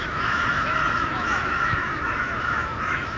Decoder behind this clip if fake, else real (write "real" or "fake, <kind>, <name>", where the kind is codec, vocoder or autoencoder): fake, autoencoder, DAC-VAE